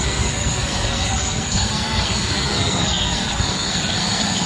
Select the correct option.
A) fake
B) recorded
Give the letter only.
A